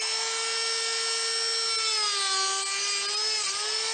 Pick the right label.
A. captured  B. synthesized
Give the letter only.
A